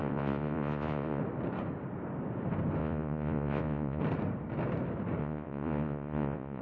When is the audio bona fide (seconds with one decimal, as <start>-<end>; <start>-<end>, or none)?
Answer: 1.2-2.8; 4.0-5.2